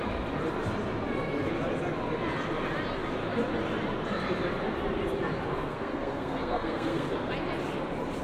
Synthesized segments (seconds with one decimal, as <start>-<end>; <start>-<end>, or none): 5.5-7.3